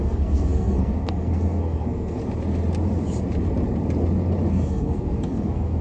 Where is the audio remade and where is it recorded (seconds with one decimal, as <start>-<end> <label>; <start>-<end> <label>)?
0.0-2.2 remade; 2.2-4.5 recorded; 4.5-5.8 remade